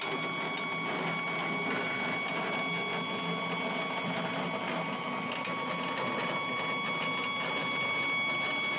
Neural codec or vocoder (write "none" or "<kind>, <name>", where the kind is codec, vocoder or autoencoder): none